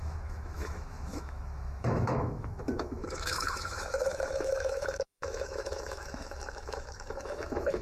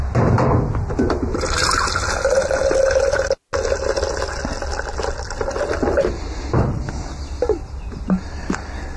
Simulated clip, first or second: first